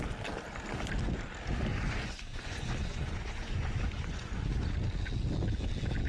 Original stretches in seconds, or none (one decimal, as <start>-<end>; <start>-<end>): 0.0-1.7; 4.3-6.1